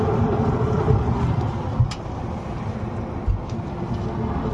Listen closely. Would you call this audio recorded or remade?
recorded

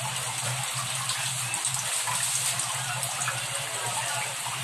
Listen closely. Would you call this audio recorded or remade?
recorded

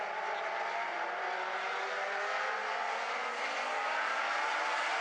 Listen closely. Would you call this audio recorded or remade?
recorded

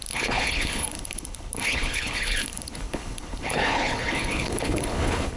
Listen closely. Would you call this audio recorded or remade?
remade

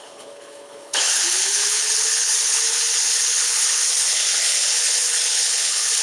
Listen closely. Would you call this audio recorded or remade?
remade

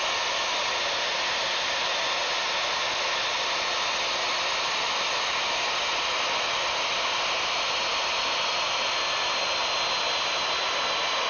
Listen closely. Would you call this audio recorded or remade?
recorded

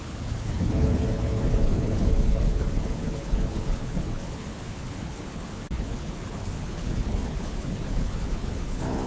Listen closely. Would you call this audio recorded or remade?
remade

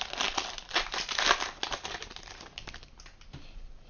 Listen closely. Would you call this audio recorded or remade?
recorded